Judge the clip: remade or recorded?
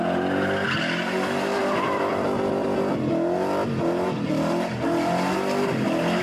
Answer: recorded